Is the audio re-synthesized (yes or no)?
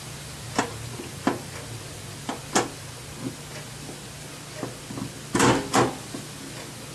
no